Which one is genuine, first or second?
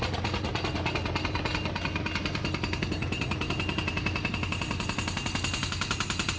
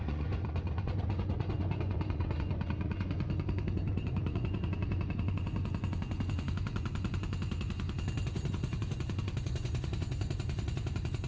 first